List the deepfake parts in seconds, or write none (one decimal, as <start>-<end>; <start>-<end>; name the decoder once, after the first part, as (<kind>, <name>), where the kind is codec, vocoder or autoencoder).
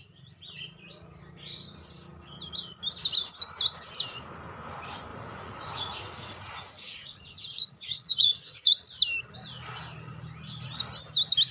5.1-8.9 (vocoder, Vocos)